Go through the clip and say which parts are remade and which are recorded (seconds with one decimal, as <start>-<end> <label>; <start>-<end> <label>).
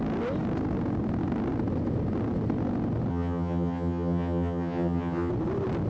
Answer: 0.0-3.1 recorded; 3.1-5.3 remade; 5.3-5.9 recorded